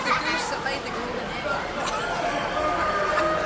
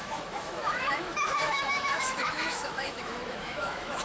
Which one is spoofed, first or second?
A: second